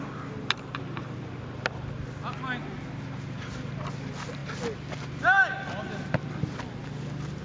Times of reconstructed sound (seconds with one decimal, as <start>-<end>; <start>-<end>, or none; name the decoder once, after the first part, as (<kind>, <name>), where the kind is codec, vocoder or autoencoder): none